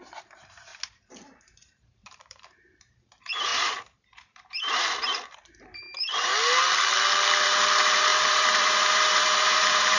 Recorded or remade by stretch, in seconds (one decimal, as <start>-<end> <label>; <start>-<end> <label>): 0.0-0.7 remade; 0.7-1.2 recorded; 1.2-6.3 remade; 6.3-7.4 recorded; 7.4-10.0 remade